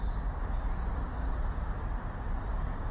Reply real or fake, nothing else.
real